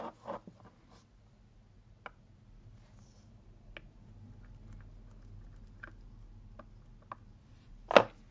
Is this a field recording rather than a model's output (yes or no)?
yes